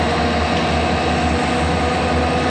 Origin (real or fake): real